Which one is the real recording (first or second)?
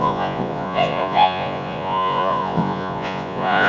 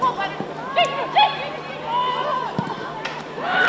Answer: second